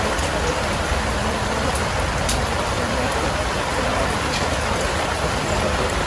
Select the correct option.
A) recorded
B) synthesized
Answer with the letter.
B